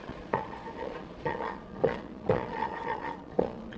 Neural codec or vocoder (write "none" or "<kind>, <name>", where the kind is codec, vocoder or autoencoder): vocoder, Vocos